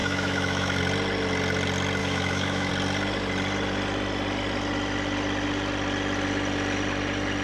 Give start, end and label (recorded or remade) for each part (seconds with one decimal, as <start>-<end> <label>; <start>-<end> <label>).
0.0-0.8 remade; 0.8-2.0 recorded; 2.0-2.7 remade; 2.7-7.4 recorded